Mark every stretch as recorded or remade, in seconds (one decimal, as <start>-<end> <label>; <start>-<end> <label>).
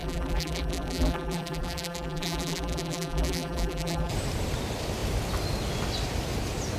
0.0-4.1 remade; 4.1-6.8 recorded